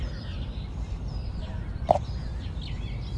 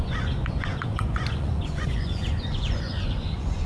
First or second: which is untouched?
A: first